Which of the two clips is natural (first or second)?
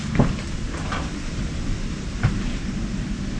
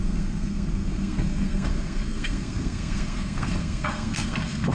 first